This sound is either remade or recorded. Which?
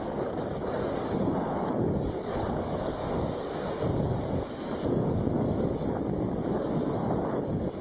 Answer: remade